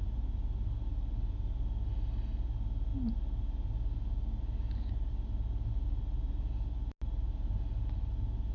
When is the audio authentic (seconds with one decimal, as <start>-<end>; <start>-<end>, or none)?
0.0-8.5